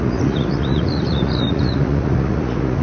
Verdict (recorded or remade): remade